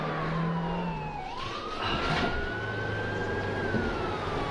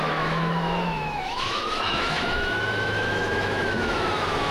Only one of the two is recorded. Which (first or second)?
first